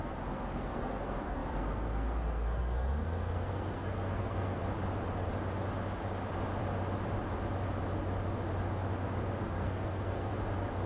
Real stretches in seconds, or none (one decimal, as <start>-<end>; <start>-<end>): 4.6-9.4; 10.3-10.9